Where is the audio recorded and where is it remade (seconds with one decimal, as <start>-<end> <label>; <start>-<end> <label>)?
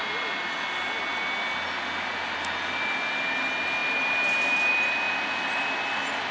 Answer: 0.0-6.3 recorded